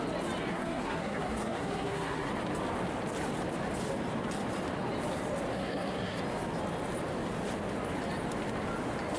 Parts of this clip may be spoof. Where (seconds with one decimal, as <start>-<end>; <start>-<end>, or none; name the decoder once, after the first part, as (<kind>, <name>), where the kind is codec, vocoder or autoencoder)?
0.5-2.3 (codec, SNAC); 5.5-6.2